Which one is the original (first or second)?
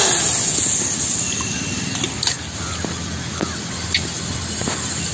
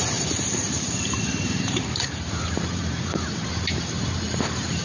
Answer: first